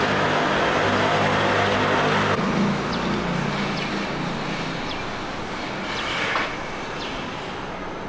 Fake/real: real